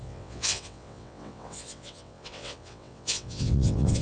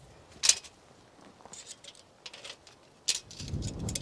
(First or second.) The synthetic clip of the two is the first